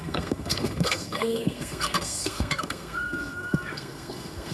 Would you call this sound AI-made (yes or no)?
yes